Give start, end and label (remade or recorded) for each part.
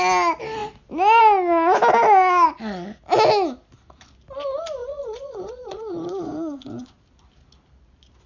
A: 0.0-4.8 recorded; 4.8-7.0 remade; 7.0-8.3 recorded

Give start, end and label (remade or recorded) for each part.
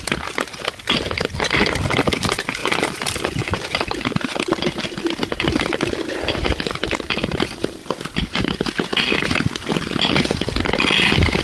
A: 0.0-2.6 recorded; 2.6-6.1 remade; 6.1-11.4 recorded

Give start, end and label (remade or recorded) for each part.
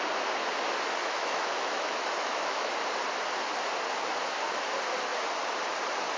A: 0.0-1.0 recorded; 1.0-2.7 remade; 2.7-6.2 recorded